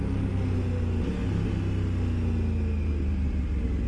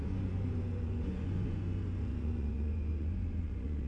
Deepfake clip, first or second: second